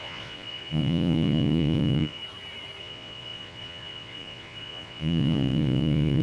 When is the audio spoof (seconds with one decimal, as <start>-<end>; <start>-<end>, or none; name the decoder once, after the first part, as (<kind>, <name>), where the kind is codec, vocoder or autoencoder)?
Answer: 0.0-2.2 (vocoder, Vocos); 2.8-6.2